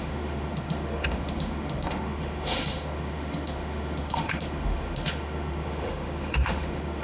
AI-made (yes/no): yes